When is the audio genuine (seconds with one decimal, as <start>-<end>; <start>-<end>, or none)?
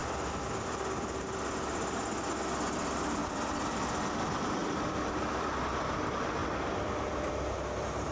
0.5-3.2; 3.7-4.6; 5.8-6.4; 7.3-8.1